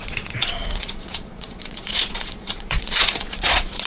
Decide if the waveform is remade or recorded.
remade